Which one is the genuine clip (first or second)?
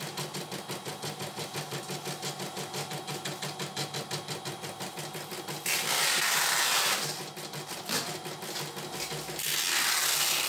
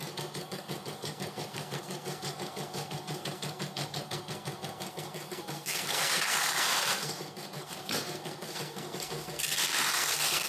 first